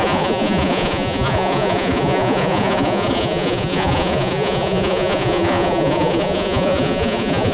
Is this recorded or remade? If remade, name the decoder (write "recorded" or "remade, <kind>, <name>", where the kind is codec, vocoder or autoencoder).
remade, vocoder, Vocos